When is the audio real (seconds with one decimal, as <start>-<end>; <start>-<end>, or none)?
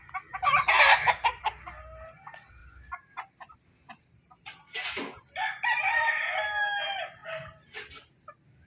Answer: 0.0-8.7